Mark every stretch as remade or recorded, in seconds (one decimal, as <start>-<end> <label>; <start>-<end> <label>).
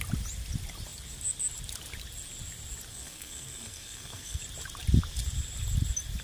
0.0-2.9 recorded; 2.9-4.4 remade; 4.4-6.2 recorded